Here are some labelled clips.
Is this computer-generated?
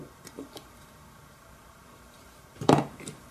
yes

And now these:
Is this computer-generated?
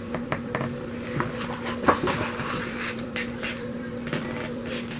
yes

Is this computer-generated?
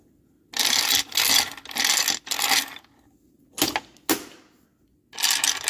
no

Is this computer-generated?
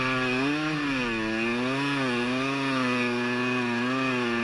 no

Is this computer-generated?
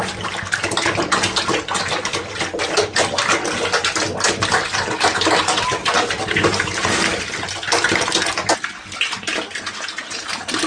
no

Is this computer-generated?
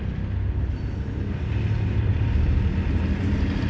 no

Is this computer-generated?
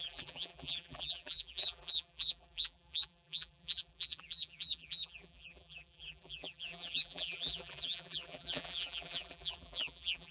yes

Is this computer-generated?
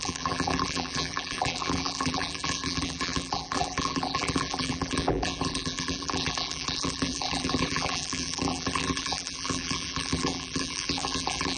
yes